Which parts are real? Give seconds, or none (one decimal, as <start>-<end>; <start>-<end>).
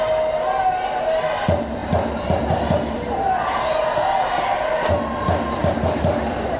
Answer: 0.0-6.6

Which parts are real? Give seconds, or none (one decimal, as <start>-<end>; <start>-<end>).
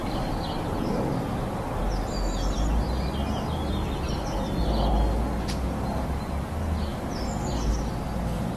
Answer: 0.8-3.2; 4.9-8.6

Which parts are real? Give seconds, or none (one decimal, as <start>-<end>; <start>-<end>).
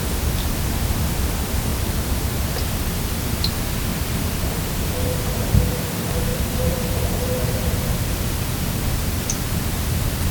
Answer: 0.0-1.7; 2.5-3.9; 4.4-6.3; 7.3-10.3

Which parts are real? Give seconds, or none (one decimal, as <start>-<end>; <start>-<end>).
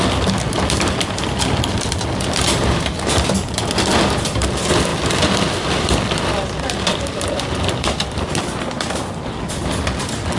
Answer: none